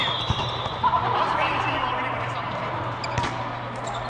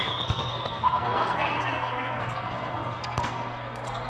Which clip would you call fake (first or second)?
second